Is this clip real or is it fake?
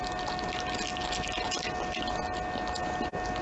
real